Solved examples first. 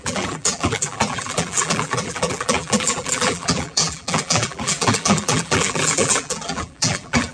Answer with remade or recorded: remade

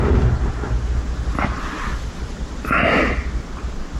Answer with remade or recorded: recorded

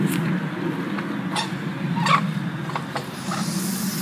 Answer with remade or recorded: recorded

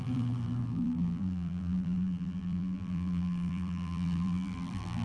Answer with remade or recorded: remade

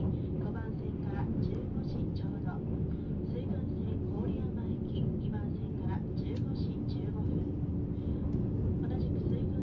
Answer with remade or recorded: recorded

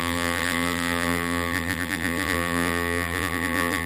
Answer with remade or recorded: remade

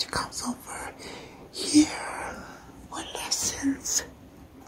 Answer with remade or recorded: recorded